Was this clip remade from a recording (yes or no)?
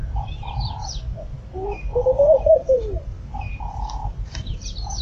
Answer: yes